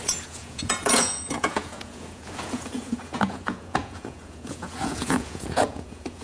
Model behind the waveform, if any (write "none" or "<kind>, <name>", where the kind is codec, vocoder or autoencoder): vocoder, Vocos